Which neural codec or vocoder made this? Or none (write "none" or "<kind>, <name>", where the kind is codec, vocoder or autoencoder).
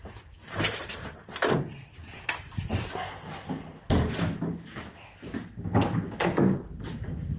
none